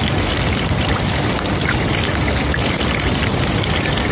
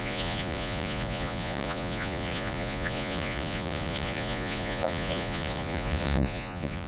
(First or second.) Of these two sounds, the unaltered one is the first